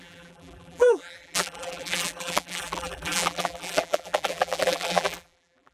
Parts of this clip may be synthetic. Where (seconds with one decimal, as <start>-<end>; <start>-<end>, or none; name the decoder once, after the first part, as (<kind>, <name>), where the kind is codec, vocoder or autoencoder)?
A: 0.0-5.7 (vocoder, BigVGAN v2)